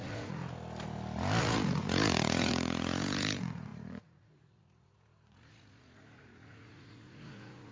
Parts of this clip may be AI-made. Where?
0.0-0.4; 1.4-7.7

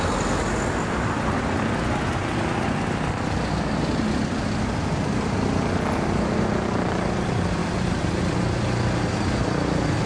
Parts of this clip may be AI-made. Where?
7.6-8.2

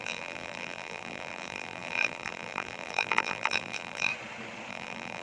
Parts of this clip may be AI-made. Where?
0.0-4.1; 4.7-5.2

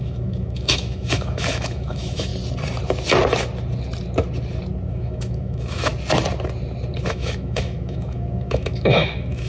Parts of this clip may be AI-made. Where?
0.0-2.3; 4.9-5.9; 7.1-9.5